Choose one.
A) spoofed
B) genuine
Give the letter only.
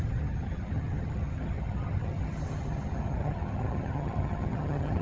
A